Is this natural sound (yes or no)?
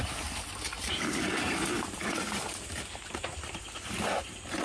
no